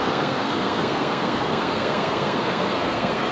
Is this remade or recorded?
remade